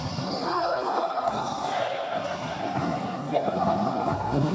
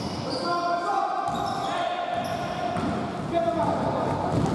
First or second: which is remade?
first